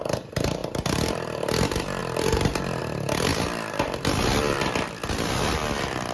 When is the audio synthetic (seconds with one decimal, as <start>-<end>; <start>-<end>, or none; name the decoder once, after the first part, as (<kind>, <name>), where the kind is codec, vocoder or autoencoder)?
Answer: 0.0-0.6 (vocoder, BigVGAN v2); 1.1-2.0; 2.8-3.3; 5.3-6.1